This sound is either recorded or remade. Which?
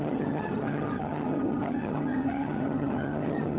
remade